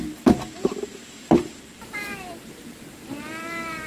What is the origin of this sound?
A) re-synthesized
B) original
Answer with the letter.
A